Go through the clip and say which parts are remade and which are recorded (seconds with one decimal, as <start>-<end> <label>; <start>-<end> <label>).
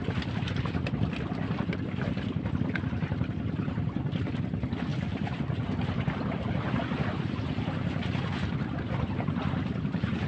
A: 0.0-10.3 recorded